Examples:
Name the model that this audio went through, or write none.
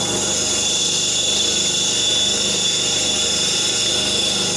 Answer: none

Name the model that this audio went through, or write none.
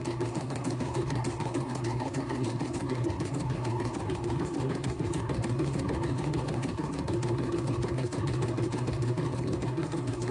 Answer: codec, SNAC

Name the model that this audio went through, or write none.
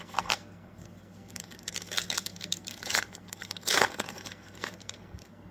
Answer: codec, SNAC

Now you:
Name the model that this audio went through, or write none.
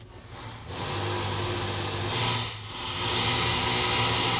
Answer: none